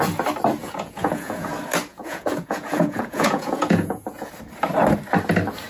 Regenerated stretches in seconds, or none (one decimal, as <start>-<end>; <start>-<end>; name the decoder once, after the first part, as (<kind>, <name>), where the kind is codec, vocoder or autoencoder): 0.6-1.5 (vocoder, Vocos); 1.9-4.3